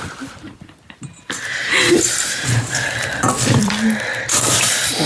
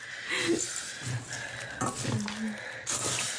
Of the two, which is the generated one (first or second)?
first